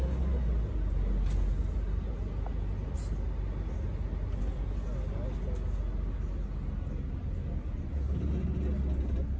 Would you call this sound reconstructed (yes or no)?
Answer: no